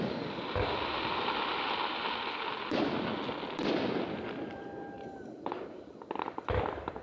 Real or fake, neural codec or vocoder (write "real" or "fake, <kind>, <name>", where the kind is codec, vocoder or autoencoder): real